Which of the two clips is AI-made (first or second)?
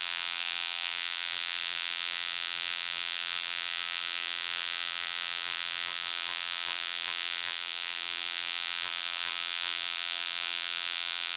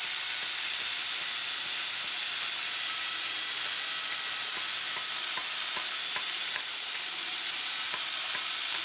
first